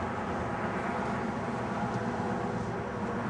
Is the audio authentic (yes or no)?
yes